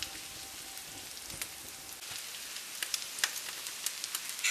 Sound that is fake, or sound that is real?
real